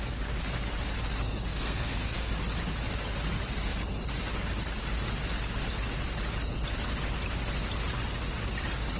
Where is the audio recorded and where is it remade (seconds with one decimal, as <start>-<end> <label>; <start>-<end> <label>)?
0.0-1.5 recorded; 1.5-2.3 remade; 2.3-9.0 recorded